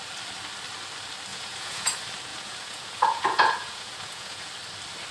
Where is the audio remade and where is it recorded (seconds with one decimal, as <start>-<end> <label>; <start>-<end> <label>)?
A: 0.0-1.3 recorded; 1.3-1.9 remade; 1.9-2.3 recorded; 2.3-4.5 remade; 4.5-5.1 recorded

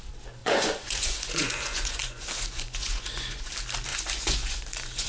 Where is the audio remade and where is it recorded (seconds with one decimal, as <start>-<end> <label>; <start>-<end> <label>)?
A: 0.0-0.4 recorded; 0.4-3.5 remade; 3.5-3.9 recorded; 3.9-5.1 remade

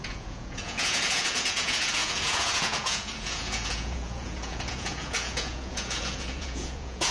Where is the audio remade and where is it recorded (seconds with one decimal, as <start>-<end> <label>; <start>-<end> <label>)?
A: 0.0-7.1 remade

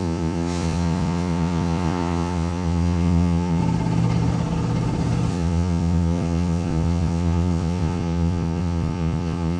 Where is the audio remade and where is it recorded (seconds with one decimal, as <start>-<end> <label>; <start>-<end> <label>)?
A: 0.0-3.6 remade; 3.6-5.3 recorded; 5.3-9.6 remade

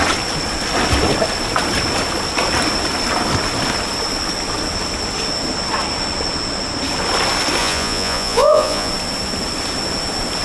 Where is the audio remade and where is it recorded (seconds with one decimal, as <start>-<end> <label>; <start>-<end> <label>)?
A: 0.0-7.6 recorded; 7.6-8.9 remade; 8.9-10.4 recorded